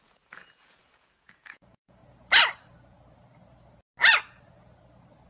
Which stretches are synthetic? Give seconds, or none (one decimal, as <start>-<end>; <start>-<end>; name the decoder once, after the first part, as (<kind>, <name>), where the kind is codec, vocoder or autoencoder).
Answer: 0.0-2.0 (vocoder, Vocos)